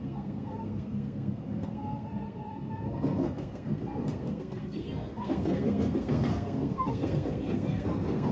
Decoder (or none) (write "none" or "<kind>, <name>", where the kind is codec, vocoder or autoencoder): codec, SNAC